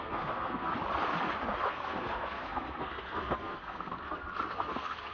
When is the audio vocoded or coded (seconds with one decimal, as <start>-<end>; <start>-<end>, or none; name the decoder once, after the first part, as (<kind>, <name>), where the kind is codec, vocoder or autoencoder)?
0.0-0.7 (codec, SNAC); 1.7-5.1